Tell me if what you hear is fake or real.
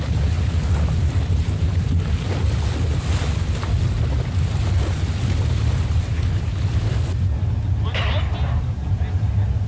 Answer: real